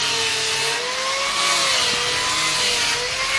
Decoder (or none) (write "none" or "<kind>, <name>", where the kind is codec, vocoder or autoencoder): none